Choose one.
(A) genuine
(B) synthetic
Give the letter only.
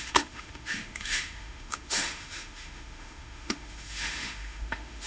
B